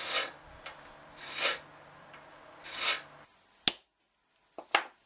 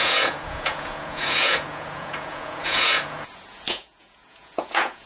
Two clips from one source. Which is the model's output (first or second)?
second